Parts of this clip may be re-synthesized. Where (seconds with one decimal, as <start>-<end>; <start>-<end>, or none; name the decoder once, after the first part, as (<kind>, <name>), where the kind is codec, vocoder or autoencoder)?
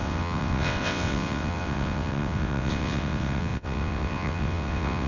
0.0-5.1 (vocoder, WaveNeXt)